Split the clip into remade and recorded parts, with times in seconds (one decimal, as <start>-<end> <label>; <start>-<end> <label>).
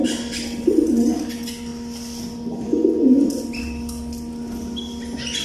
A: 0.0-5.4 recorded